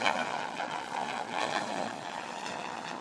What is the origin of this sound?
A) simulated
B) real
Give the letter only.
A